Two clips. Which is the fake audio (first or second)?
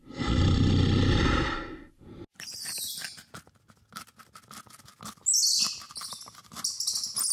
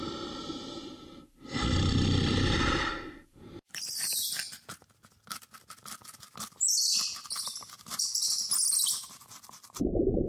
second